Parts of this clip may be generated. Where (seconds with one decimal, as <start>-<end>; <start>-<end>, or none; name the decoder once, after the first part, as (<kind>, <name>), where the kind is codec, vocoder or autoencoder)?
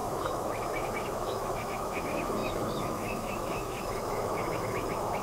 0.0-5.2 (autoencoder, DAC-VAE)